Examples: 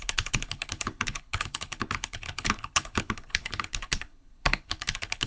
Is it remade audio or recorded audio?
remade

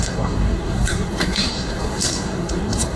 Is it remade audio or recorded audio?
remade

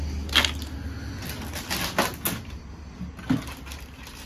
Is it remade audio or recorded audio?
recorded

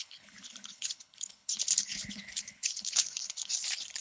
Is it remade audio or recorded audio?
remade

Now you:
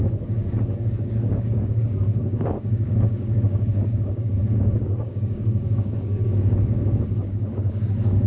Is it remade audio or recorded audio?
remade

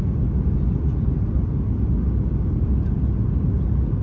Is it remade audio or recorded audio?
recorded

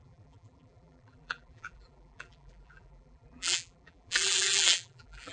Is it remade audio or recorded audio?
remade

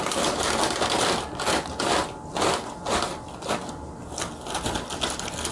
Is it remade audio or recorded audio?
recorded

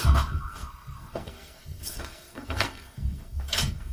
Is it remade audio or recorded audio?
remade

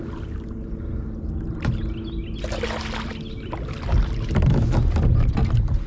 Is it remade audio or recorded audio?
recorded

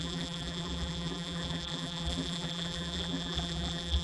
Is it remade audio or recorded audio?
remade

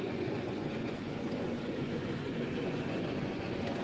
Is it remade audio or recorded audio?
remade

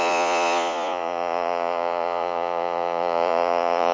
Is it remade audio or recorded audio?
remade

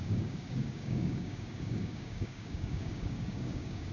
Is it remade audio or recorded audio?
remade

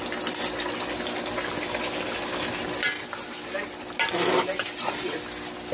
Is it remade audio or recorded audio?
recorded